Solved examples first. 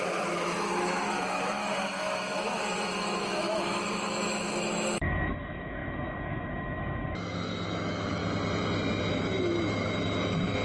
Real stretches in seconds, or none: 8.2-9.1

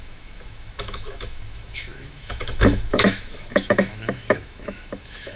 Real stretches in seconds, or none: none

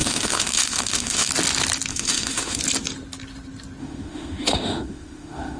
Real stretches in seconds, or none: 1.3-1.9; 2.6-3.8

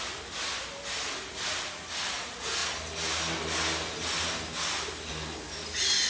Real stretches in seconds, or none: 0.0-6.1